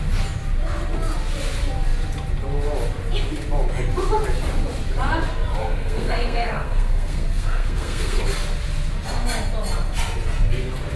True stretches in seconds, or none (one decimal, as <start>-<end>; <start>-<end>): 0.0-5.6; 8.2-11.0

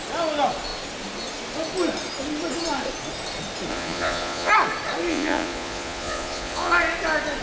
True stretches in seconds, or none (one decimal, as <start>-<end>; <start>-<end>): 0.0-3.7; 4.5-5.1; 6.7-7.4

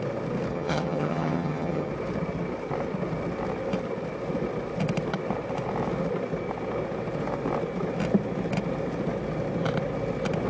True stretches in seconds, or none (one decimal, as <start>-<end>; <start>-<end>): 0.0-0.5; 1.9-10.5

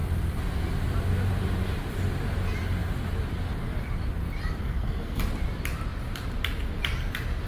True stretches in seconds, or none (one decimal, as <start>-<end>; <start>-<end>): 0.0-4.6; 5.2-7.5

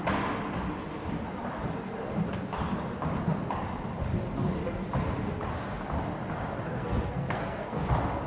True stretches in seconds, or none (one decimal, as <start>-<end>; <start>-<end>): 0.0-6.7; 7.9-8.3

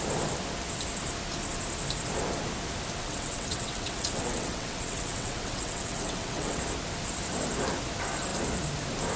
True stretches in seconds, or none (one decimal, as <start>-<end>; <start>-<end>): 0.0-3.0; 6.6-9.2

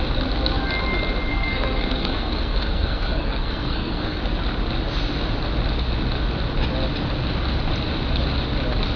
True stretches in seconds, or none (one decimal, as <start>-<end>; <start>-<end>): 0.0-1.3; 4.2-9.0

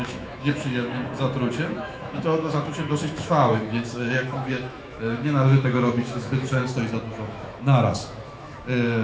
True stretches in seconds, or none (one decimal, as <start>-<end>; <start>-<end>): 1.0-1.5; 6.6-7.1